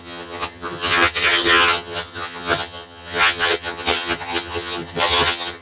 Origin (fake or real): fake